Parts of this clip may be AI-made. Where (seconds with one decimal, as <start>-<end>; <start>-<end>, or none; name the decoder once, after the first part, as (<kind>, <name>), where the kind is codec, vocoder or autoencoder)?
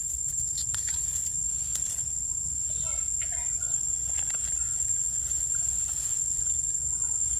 none